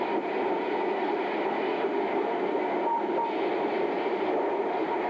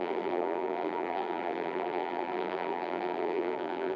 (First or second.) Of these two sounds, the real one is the first